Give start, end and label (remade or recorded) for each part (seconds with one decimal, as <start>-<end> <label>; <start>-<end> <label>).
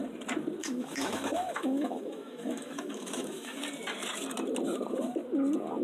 0.0-0.6 recorded; 0.6-3.6 remade; 3.6-5.8 recorded